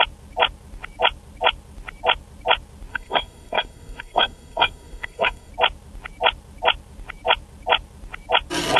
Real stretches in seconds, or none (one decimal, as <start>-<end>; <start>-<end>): 0.0-2.9; 5.5-8.8